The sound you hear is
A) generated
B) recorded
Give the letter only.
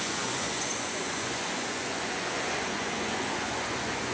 A